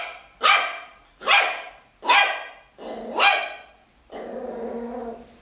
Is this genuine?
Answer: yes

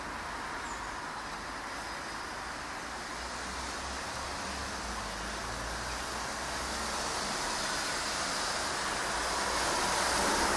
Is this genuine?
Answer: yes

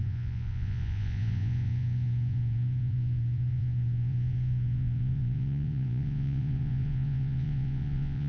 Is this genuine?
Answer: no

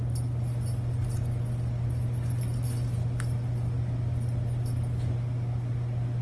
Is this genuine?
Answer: yes